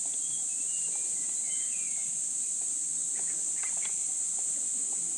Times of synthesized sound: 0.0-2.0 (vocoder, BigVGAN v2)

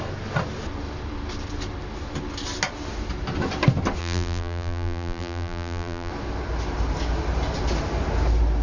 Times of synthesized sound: 4.0-6.1 (vocoder, BigVGAN v2)

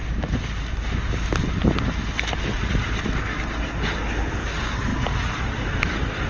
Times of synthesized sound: 0.0-0.6 (vocoder, BigVGAN v2); 4.9-5.7

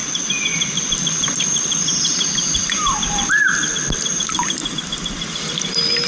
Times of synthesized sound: 0.0-3.3 (vocoder, BigVGAN v2); 4.1-4.7

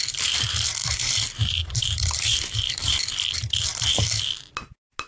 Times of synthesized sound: 0.8-3.0 (vocoder, BigVGAN v2)